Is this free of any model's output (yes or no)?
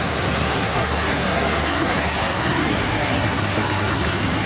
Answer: no